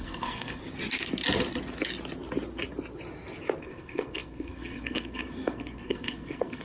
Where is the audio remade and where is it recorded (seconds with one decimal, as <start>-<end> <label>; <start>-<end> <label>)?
0.0-0.6 remade; 0.6-3.6 recorded; 3.6-6.6 remade